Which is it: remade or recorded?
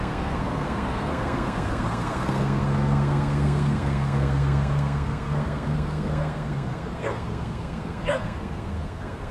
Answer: remade